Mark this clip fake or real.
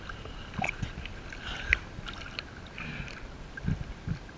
real